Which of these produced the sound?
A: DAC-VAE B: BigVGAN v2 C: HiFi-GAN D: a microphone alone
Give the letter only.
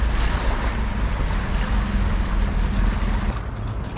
D